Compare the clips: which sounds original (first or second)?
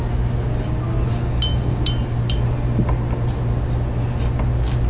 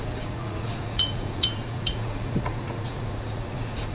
first